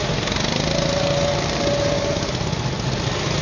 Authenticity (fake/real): real